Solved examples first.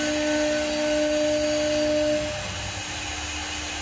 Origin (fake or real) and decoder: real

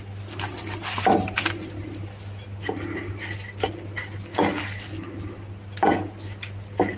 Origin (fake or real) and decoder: real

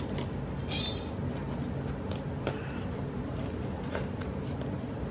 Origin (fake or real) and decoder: real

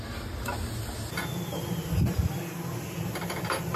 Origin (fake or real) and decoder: real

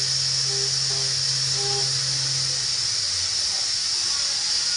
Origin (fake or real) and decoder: real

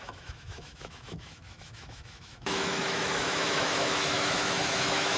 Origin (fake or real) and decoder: fake, autoencoder, DAC-VAE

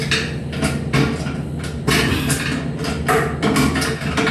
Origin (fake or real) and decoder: real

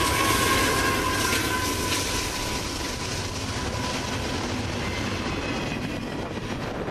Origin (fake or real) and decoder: real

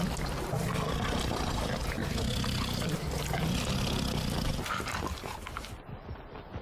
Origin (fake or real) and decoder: real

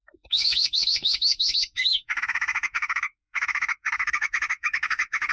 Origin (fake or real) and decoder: fake, autoencoder, DAC-VAE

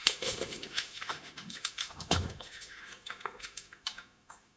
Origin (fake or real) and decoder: fake, autoencoder, DAC-VAE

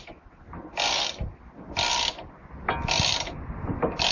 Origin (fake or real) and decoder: real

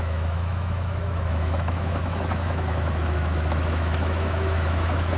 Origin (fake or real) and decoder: fake, autoencoder, DAC-VAE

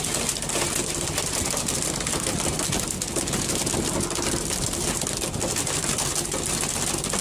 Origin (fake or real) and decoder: real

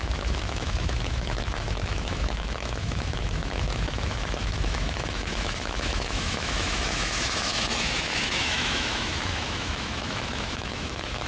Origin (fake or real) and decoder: fake, autoencoder, DAC-VAE